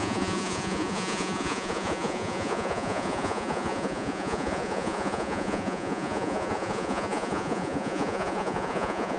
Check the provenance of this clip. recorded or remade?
remade